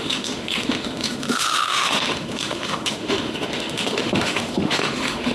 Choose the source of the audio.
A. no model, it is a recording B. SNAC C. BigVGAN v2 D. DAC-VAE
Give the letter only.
D